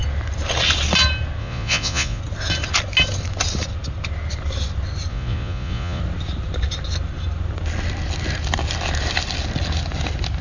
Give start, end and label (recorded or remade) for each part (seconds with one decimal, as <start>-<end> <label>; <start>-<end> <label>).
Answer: 0.0-1.4 recorded; 1.4-2.2 remade; 2.2-5.1 recorded; 5.1-6.0 remade; 6.0-10.4 recorded